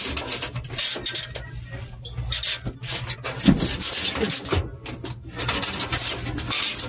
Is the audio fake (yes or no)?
no